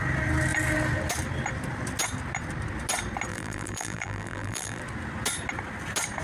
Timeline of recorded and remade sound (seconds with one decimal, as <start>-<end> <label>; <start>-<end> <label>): 0.0-3.3 recorded; 3.3-4.8 remade; 4.8-6.2 recorded